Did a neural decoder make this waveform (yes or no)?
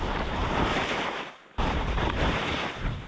yes